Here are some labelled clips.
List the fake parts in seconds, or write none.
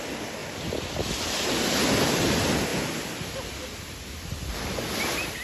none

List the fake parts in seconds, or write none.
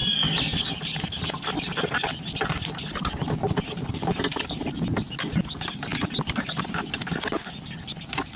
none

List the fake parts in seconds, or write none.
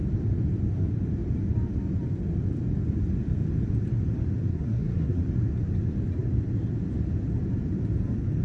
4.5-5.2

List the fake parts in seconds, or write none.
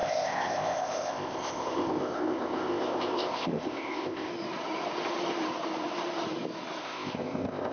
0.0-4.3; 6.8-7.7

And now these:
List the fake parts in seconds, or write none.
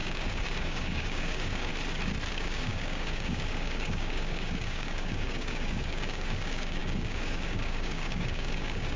0.0-1.7; 2.3-9.0